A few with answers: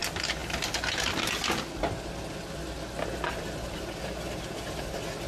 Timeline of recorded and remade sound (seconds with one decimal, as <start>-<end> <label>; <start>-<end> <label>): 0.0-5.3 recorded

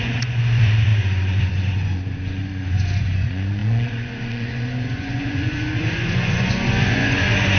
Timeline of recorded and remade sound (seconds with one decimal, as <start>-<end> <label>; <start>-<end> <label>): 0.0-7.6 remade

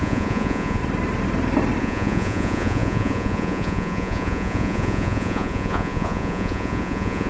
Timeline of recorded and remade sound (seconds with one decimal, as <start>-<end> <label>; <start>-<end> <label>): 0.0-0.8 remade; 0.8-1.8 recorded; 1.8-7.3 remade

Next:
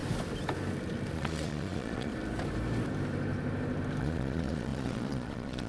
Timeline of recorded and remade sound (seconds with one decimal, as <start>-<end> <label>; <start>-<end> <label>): 0.0-1.1 recorded; 1.1-2.1 remade; 2.1-4.0 recorded; 4.0-5.7 remade

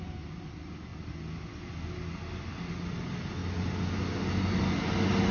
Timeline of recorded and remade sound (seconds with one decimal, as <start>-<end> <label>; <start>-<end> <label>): 0.0-5.3 recorded

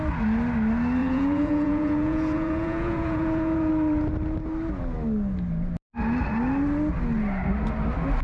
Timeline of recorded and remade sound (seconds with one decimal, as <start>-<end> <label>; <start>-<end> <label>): 0.0-1.0 recorded; 1.0-3.7 remade; 3.7-8.2 recorded

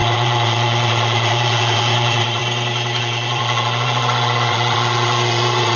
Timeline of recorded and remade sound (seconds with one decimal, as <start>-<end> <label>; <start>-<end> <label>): 0.0-2.4 remade; 2.4-3.0 recorded; 3.0-5.8 remade

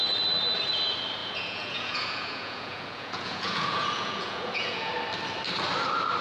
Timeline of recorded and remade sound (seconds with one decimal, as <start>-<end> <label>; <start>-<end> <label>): 0.0-1.2 recorded; 1.2-4.9 remade; 4.9-6.2 recorded